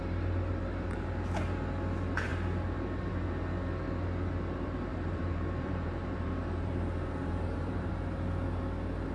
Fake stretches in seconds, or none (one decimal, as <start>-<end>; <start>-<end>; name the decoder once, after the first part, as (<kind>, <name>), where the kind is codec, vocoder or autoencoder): 4.9-7.9 (vocoder, BigVGAN v2)